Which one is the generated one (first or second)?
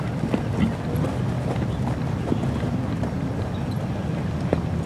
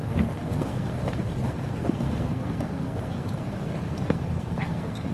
second